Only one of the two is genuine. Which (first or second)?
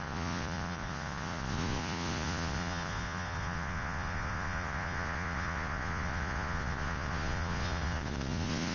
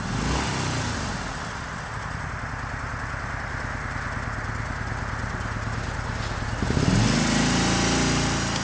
second